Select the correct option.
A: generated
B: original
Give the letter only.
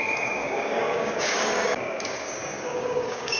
A